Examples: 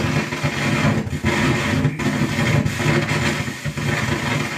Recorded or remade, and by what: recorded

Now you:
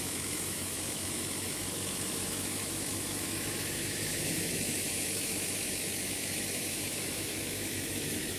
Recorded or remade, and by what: remade, autoencoder, DAC-VAE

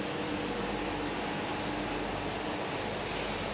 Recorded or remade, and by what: recorded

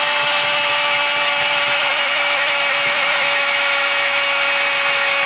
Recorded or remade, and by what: remade, autoencoder, DAC-VAE